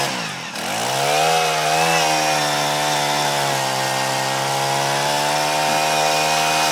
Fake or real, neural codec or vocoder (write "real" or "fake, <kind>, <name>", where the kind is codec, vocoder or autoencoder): real